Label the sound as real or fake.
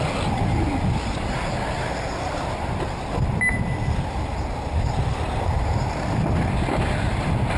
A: real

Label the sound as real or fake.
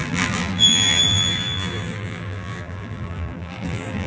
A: fake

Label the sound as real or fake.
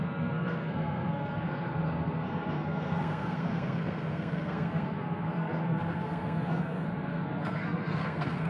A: fake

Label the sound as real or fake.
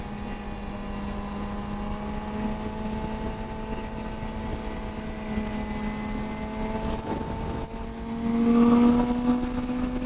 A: real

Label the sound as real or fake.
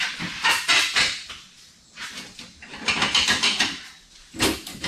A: real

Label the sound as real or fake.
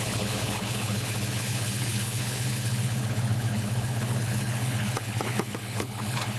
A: fake